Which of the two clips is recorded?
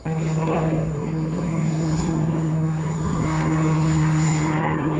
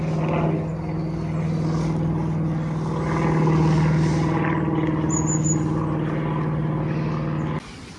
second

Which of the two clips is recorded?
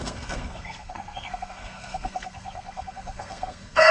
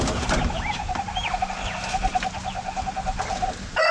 second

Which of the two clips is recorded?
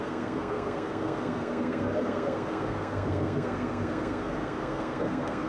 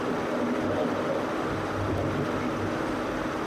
second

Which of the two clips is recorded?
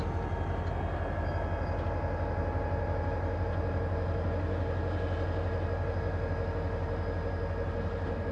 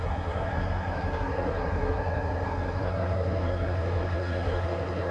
first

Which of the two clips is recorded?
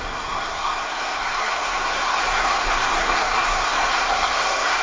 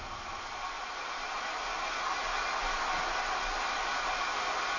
second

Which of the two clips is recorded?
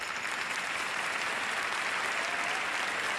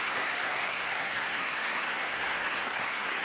first